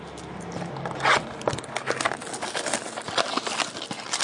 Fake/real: real